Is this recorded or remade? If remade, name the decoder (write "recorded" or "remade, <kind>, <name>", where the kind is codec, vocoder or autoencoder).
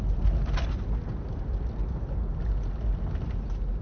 recorded